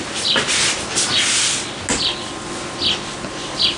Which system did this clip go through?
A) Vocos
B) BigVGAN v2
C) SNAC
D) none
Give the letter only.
D